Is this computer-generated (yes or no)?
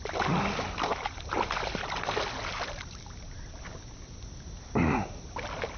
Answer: no